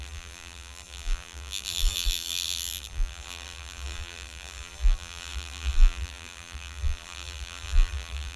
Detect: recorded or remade remade